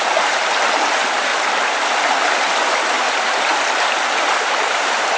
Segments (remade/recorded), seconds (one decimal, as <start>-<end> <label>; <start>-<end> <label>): 0.0-1.3 remade; 1.3-2.4 recorded; 2.4-3.5 remade; 3.5-4.7 recorded; 4.7-5.2 remade